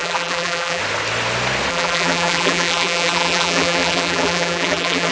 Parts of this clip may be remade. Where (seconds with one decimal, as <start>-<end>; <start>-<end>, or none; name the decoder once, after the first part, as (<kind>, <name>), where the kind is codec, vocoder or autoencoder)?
0.0-0.8 (vocoder, BigVGAN v2); 1.7-5.1